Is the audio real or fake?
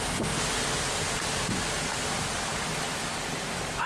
real